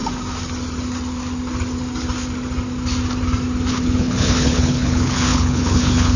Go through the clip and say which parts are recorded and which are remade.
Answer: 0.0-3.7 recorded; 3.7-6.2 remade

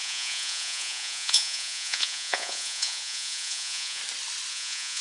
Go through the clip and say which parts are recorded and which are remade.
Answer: 0.0-4.0 remade; 4.0-4.5 recorded; 4.5-5.0 remade

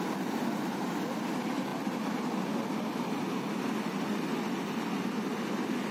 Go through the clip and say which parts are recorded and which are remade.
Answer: 0.0-5.9 recorded

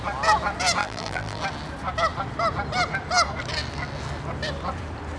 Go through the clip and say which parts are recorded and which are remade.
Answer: 0.0-0.8 recorded; 0.8-1.4 remade; 1.4-5.2 recorded